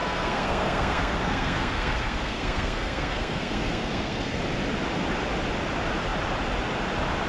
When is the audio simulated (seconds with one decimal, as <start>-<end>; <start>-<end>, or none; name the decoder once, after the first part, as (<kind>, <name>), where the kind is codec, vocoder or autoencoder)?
0.0-4.4 (codec, SNAC)

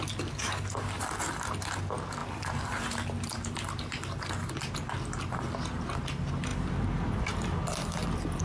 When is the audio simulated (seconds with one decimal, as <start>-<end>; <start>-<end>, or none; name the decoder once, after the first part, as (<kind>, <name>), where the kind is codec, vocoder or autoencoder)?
2.2-2.8 (vocoder, BigVGAN v2); 6.5-8.4

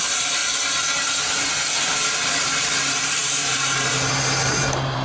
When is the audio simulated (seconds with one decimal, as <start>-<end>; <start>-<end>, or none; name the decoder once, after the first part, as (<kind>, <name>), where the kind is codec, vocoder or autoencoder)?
0.0-0.4 (vocoder, BigVGAN v2); 2.1-5.0

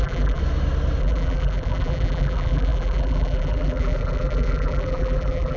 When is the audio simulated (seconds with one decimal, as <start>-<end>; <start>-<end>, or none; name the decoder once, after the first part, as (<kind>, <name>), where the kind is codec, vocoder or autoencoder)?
0.0-0.4 (vocoder, BigVGAN v2); 1.0-5.6

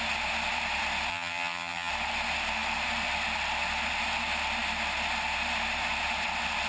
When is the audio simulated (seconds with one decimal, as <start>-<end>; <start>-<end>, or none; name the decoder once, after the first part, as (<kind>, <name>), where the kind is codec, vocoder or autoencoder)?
1.1-1.9 (vocoder, HiFi-GAN)